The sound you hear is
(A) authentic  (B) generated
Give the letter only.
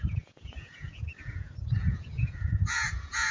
B